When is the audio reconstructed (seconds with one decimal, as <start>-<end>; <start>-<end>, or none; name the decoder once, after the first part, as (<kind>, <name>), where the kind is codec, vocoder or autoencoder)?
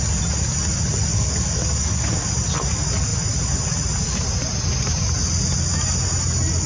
1.1-2.3 (codec, DAC)